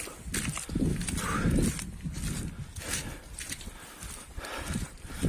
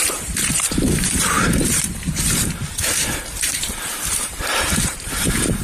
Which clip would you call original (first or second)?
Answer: first